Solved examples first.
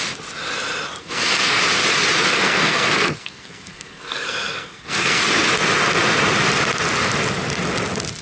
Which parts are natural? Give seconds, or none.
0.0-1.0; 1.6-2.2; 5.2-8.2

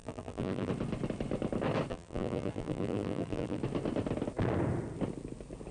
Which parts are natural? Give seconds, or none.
0.7-1.9; 3.6-5.7